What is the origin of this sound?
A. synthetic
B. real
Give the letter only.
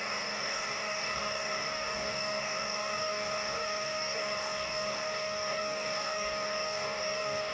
A